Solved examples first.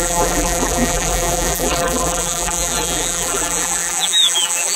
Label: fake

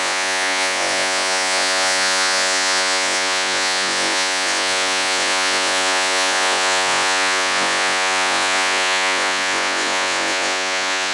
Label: fake